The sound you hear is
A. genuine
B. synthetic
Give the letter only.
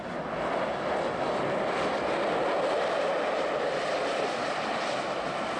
A